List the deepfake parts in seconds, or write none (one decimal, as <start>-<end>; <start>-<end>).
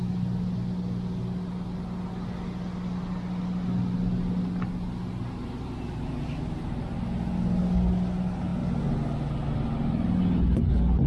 none